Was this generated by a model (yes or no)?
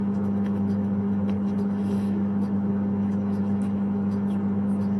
yes